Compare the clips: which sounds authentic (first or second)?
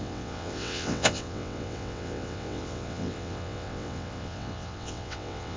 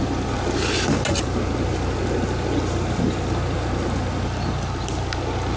second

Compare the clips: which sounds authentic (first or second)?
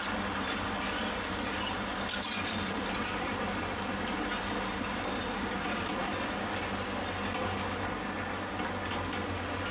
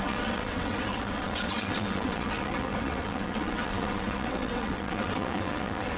first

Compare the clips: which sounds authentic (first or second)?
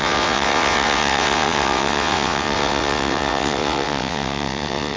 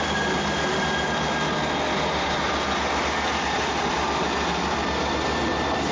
second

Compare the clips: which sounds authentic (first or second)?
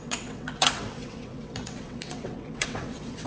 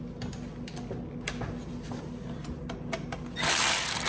second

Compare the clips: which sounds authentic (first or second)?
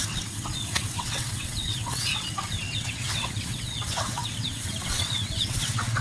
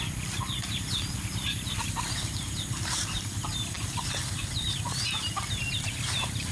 second